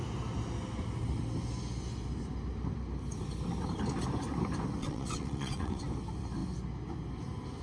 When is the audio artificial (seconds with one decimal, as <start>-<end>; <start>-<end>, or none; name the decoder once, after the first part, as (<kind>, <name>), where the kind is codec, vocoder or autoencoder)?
4.8-5.8 (vocoder, WaveNeXt)